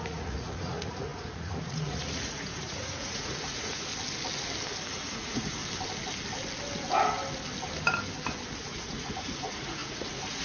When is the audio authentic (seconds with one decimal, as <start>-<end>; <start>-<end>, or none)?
3.9-4.9; 5.6-8.6